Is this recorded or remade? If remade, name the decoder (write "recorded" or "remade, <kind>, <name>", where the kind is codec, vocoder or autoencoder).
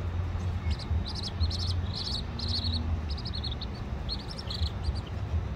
recorded